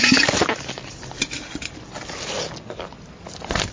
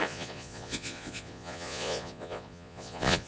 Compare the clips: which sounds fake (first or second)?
second